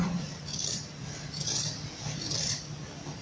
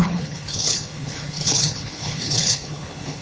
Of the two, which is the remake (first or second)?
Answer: second